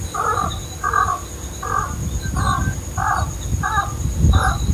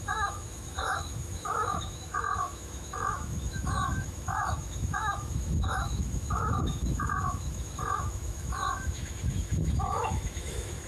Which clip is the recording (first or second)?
first